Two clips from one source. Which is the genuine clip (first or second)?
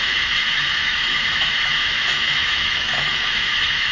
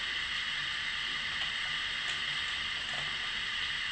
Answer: second